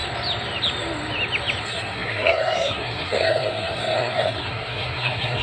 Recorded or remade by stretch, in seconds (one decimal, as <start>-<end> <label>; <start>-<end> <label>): 0.0-1.6 recorded; 1.6-5.4 remade